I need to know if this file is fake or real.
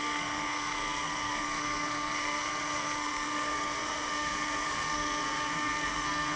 fake